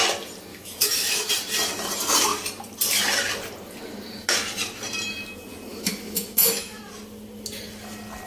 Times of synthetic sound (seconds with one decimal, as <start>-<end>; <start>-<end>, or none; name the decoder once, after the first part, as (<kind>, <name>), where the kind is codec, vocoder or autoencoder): 0.5-1.3 (autoencoder, DAC-VAE); 5.7-6.8